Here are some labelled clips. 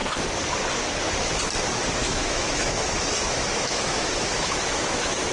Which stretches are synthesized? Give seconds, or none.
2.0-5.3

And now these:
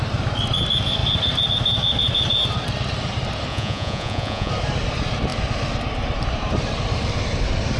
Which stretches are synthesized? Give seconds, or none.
3.5-4.5

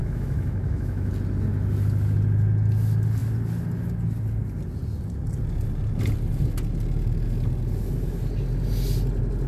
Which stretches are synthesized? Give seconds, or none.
0.0-1.1